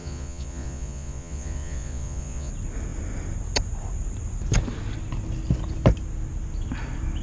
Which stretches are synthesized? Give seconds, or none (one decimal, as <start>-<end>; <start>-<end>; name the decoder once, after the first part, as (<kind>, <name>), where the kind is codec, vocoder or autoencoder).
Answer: 0.0-2.5 (vocoder, Vocos)